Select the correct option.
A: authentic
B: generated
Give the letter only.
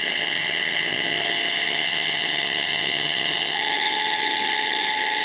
B